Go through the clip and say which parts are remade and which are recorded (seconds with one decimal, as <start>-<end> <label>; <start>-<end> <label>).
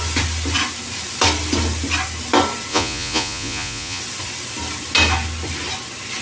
0.0-2.7 recorded; 2.7-4.0 remade; 4.0-6.2 recorded